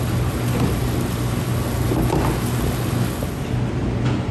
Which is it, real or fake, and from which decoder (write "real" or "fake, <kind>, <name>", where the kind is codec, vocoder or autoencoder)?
real